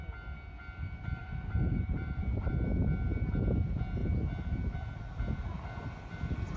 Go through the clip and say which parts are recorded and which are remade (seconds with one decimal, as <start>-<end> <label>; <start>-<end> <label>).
0.0-1.2 recorded; 1.2-2.5 remade; 2.5-6.6 recorded